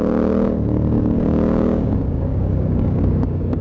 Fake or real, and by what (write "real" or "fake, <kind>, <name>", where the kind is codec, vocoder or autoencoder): fake, codec, DAC